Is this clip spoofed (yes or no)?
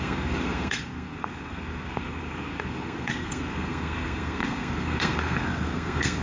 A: yes